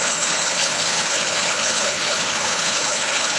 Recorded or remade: remade